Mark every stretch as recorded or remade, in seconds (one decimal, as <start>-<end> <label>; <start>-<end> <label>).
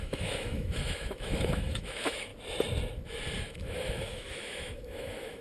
0.0-2.3 remade; 2.3-3.4 recorded; 3.4-5.4 remade